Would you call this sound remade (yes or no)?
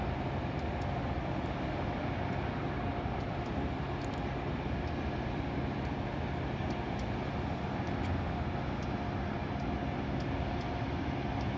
no